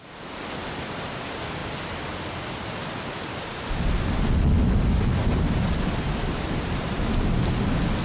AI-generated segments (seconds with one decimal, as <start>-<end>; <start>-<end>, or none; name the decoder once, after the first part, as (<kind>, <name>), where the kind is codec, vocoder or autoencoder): none